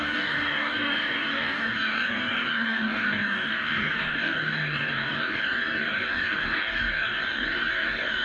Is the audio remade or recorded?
remade